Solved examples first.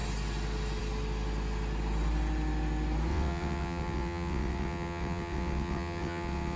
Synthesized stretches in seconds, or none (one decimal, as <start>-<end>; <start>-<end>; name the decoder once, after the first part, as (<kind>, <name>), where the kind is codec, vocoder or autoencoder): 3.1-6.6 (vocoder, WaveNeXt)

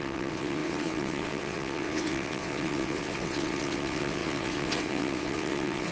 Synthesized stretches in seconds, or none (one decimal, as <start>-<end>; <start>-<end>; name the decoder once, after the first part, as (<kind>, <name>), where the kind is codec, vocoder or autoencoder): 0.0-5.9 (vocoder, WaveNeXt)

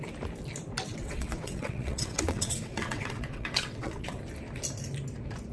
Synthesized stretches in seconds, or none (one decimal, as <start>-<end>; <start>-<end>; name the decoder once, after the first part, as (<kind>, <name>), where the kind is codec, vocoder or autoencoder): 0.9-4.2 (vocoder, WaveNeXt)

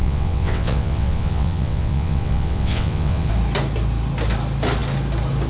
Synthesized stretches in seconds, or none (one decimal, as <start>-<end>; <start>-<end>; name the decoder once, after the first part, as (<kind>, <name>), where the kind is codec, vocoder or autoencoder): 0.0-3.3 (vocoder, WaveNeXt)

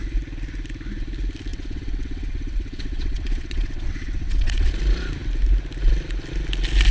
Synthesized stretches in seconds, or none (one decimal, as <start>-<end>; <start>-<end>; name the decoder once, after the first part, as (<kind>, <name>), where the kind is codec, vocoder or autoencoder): 1.5-4.7 (vocoder, WaveNeXt)

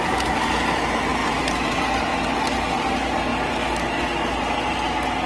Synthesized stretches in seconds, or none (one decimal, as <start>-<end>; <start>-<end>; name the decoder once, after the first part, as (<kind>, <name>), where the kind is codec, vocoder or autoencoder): none

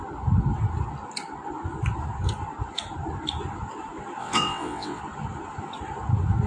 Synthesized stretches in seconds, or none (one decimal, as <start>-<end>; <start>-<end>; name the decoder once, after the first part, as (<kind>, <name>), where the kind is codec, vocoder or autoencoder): 4.2-5.0 (vocoder, WaveNeXt)